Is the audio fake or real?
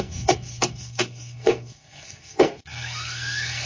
fake